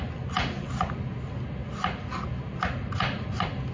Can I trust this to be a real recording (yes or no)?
yes